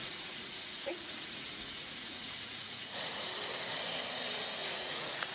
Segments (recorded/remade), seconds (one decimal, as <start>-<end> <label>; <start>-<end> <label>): 0.0-3.1 remade; 3.1-4.6 recorded; 4.6-5.3 remade